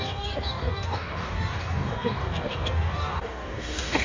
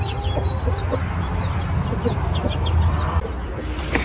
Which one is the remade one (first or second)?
first